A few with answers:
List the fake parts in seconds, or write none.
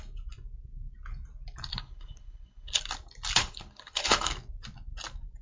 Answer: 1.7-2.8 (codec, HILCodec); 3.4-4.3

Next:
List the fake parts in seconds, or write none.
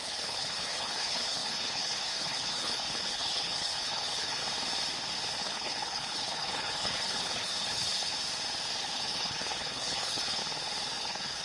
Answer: 0.0-4.4 (codec, HILCodec); 5.4-8.1; 8.8-10.4; 11.0-11.4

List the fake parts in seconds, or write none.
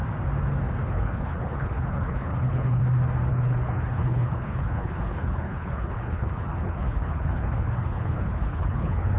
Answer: 0.9-2.8 (codec, HILCodec); 3.3-9.2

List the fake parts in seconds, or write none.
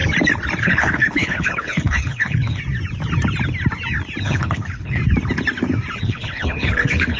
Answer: 0.6-2.6 (codec, HILCodec); 4.2-5.0; 6.0-7.2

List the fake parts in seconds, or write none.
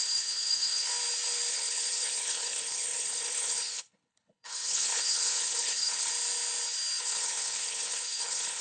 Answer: 0.0-0.9 (codec, HILCodec); 1.5-6.1; 7.0-8.6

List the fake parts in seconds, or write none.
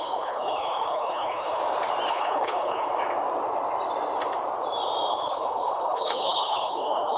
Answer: 0.0-1.6 (codec, HILCodec); 2.1-2.9; 5.1-7.2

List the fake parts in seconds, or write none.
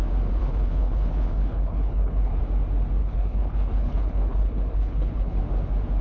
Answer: 0.4-2.4 (codec, HILCodec); 3.0-5.4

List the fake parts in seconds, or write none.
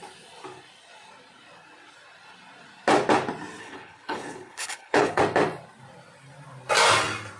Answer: 3.6-5.2 (codec, HILCodec)